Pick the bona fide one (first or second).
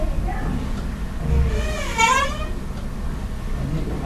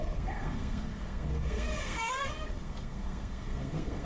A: first